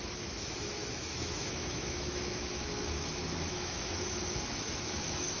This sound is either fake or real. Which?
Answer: fake